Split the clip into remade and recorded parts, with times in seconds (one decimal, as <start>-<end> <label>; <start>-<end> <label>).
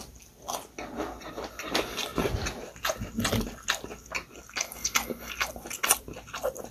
0.0-6.7 recorded